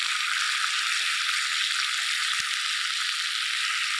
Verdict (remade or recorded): recorded